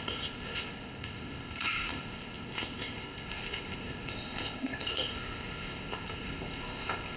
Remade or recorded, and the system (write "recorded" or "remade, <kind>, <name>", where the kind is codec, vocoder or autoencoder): remade, codec, ZipCodec